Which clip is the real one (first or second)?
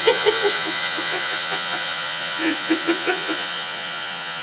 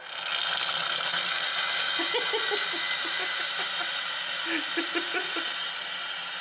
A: second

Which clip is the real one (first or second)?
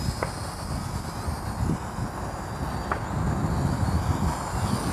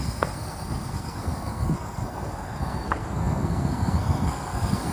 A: first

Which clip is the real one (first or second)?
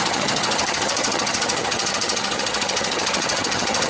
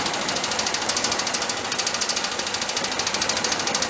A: second